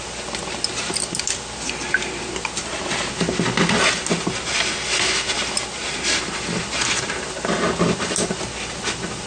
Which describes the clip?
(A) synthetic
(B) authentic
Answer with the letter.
B